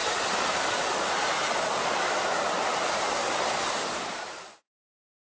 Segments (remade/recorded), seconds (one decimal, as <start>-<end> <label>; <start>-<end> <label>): 0.0-5.3 recorded